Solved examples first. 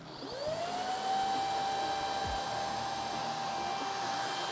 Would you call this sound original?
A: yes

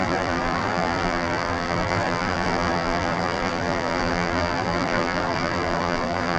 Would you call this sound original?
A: no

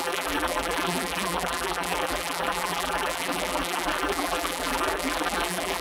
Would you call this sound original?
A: no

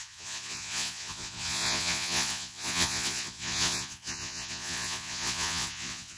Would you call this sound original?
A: no